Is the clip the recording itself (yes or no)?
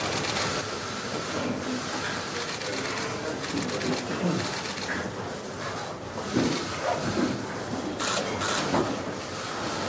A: yes